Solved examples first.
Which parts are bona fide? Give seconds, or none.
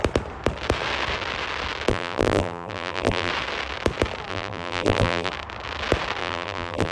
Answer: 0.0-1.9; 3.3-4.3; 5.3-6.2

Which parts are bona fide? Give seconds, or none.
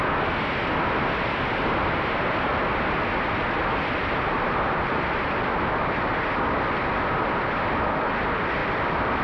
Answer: 0.0-3.6; 7.6-8.6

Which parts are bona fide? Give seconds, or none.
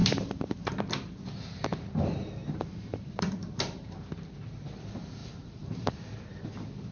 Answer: 0.7-2.4; 4.1-5.2; 6.1-6.9